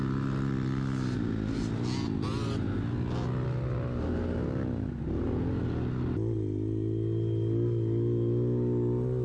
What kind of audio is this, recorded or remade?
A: recorded